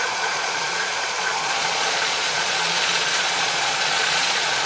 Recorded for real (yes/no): no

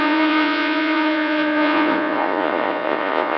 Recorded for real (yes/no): no